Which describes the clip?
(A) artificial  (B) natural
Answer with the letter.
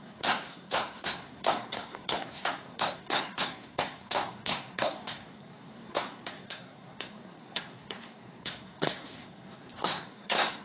A